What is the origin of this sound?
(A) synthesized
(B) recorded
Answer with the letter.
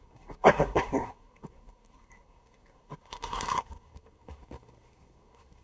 A